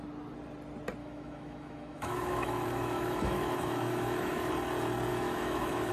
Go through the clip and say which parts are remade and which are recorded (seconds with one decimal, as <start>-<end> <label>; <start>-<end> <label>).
0.0-1.0 recorded; 1.0-4.5 remade; 4.5-5.1 recorded; 5.1-5.9 remade